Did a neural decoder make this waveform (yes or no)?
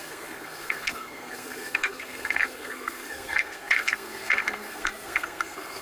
yes